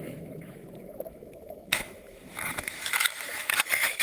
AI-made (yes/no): yes